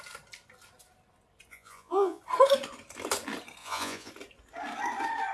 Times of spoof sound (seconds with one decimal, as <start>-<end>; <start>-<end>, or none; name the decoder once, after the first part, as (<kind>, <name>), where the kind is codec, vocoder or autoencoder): 1.5-2.2 (vocoder, Vocos); 3.6-4.1